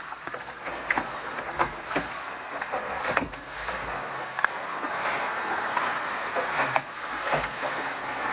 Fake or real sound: fake